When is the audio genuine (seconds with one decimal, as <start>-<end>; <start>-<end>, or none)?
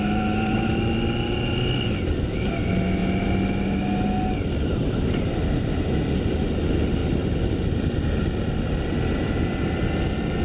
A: 0.0-10.4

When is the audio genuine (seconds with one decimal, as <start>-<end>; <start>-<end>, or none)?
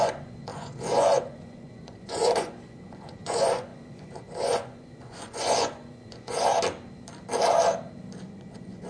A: 6.5-8.3